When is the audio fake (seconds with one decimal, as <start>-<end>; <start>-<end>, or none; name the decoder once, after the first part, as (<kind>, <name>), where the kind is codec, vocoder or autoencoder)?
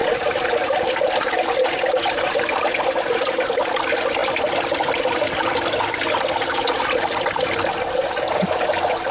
none